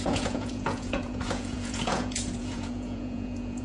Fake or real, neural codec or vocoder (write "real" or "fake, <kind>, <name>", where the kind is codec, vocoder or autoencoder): fake, vocoder, Vocos